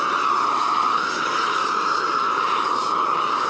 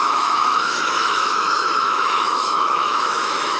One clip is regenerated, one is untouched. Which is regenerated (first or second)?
second